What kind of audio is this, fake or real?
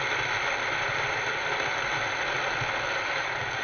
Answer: real